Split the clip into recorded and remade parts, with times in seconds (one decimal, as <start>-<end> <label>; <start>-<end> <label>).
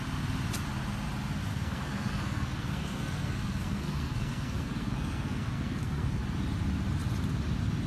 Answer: 0.0-1.5 recorded; 1.5-6.2 remade; 6.2-7.9 recorded